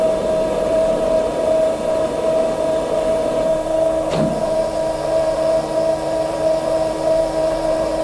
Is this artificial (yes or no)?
yes